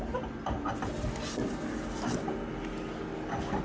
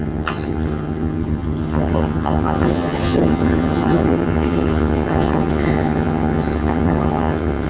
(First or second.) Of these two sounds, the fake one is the second